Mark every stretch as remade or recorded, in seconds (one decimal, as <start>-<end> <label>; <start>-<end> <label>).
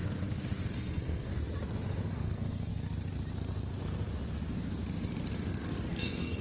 0.0-0.7 recorded; 0.7-1.3 remade; 1.3-2.1 recorded; 2.1-2.7 remade; 2.7-5.9 recorded; 5.9-6.4 remade